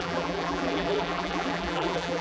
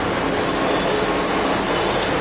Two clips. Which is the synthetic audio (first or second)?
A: first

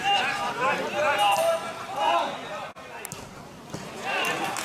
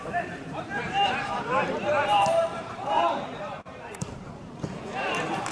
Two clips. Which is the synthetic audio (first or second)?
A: second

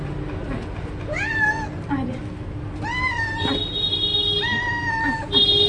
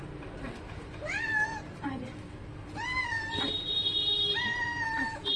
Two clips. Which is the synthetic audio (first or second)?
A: second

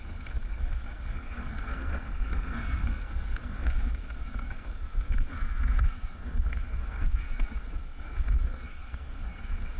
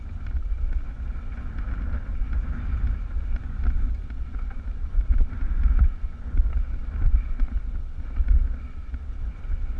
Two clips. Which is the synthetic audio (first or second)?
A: first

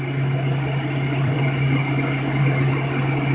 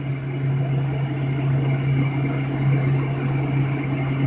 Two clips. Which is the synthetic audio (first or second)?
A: first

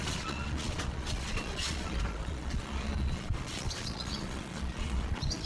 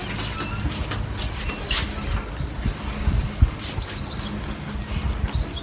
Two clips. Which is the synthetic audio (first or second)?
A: first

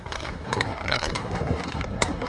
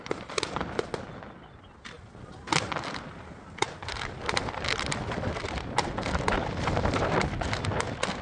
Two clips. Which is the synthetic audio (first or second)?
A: first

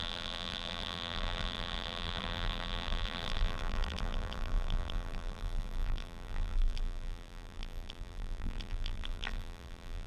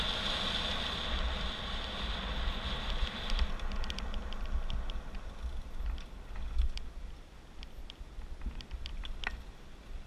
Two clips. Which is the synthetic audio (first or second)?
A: first